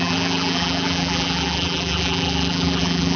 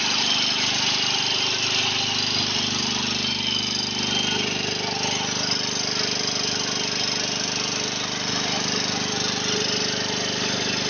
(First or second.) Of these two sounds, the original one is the second